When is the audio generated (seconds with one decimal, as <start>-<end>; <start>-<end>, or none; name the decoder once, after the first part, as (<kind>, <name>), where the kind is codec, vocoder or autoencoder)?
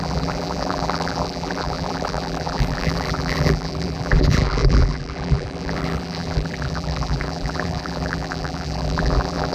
0.0-9.5 (vocoder, BigVGAN v2)